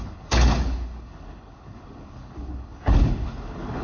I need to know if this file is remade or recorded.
remade